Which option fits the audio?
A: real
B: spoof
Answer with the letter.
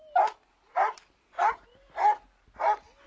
A